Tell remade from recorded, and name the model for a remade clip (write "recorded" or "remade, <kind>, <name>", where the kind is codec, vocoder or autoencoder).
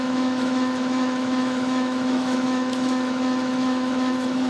remade, autoencoder, DAC-VAE